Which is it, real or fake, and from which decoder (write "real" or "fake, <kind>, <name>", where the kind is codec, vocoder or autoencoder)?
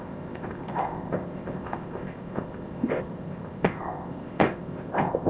fake, codec, ZipCodec